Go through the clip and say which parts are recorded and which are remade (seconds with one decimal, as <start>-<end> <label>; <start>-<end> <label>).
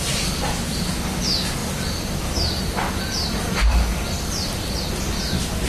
0.0-5.7 recorded